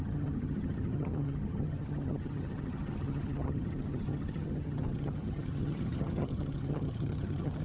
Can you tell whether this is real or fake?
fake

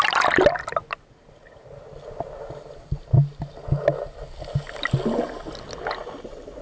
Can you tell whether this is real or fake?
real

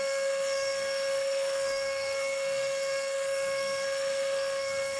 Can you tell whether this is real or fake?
fake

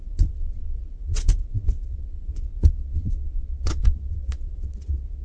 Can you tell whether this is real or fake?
fake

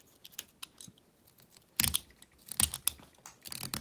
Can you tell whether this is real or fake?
real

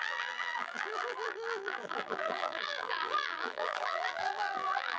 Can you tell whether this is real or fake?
fake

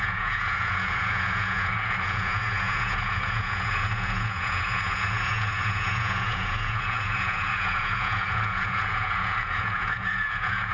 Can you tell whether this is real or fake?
fake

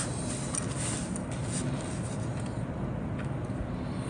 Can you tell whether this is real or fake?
real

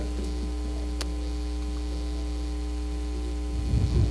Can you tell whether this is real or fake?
real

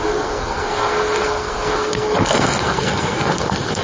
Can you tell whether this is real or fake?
fake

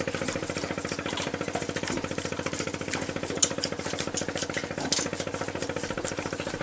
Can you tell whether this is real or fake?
real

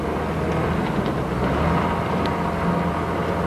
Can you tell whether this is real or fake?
real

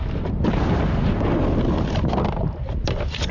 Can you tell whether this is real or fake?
real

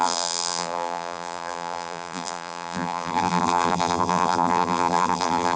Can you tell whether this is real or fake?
fake